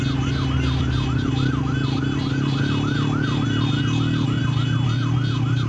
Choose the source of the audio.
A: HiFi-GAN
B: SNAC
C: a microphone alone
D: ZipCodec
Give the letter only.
C